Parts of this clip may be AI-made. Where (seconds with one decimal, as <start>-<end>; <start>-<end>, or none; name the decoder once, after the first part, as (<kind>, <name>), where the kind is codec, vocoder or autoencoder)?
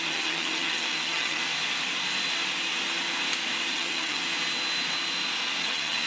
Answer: 0.0-1.4 (vocoder, HiFi-GAN); 3.7-4.2; 5.6-6.1